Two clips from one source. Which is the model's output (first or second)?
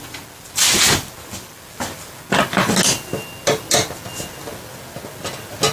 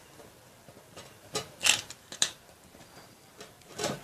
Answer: second